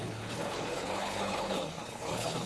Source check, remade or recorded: remade